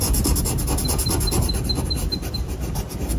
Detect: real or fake real